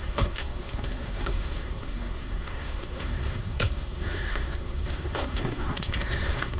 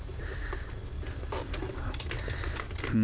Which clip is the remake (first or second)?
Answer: first